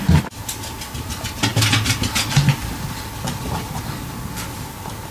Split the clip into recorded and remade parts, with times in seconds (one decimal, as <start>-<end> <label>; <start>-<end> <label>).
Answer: 0.0-5.1 recorded